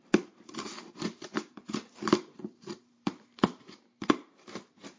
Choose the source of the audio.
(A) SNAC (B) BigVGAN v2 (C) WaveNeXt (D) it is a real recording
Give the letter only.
B